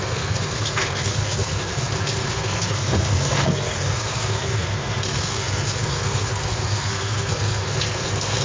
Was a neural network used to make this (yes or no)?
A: yes